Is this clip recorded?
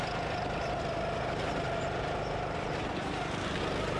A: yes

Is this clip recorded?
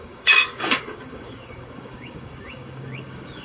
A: no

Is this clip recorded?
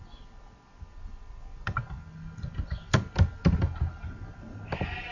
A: yes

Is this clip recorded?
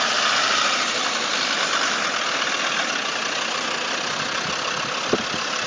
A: yes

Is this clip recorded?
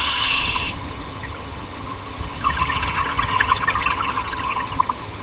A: no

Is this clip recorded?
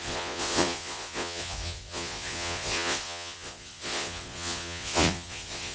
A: no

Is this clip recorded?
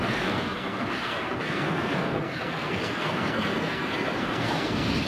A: no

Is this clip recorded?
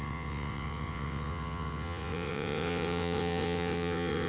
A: no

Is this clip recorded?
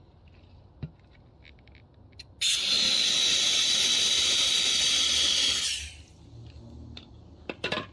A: yes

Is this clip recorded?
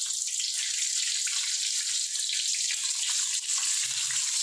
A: yes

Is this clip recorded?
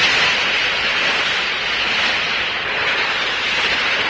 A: yes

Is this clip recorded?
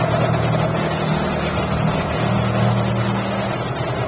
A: yes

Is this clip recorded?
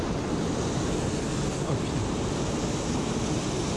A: yes